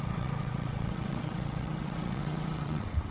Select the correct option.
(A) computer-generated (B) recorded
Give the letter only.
A